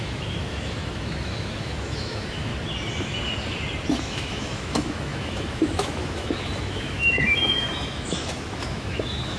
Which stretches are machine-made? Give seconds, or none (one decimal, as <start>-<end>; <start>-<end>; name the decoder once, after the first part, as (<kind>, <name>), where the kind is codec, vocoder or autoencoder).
0.0-2.5 (autoencoder, DAC-VAE); 4.0-9.4